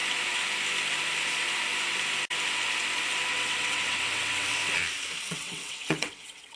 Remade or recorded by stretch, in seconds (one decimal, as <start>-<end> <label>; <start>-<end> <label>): 0.0-3.3 recorded; 3.3-4.6 remade; 4.6-5.2 recorded; 5.2-6.6 remade